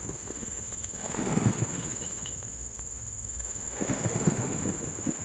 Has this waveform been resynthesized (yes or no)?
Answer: yes